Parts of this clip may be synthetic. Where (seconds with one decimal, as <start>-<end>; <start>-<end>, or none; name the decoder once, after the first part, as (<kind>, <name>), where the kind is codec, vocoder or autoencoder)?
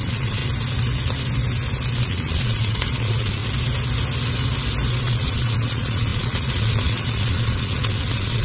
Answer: 0.0-0.4 (vocoder, Vocos); 2.0-3.4; 5.0-8.4